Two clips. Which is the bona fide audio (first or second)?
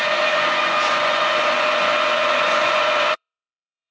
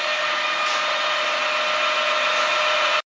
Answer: second